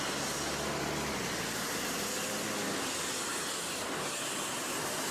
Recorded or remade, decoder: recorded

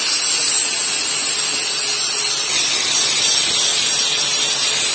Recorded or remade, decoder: recorded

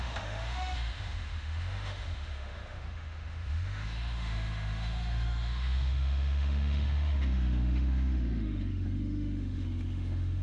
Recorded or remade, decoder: remade, autoencoder, DAC-VAE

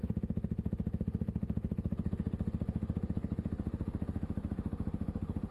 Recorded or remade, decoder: remade, autoencoder, DAC-VAE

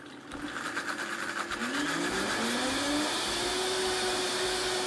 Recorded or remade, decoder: recorded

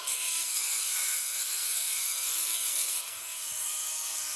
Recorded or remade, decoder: remade, codec, SNAC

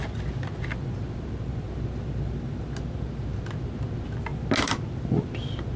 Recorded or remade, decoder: recorded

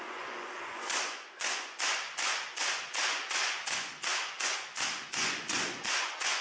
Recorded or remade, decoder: remade, vocoder, Vocos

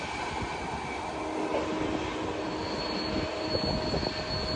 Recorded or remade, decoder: recorded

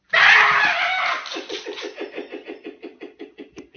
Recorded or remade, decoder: recorded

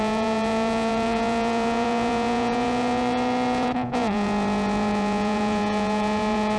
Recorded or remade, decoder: remade, vocoder, Vocos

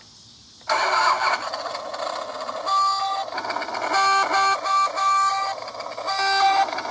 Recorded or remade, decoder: recorded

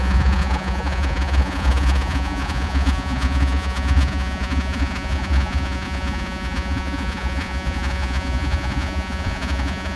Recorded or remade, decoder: remade, vocoder, Vocos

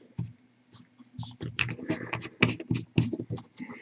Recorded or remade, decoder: recorded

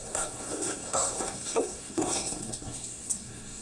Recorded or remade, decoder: remade, codec, SNAC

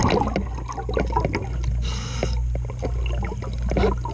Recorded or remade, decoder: recorded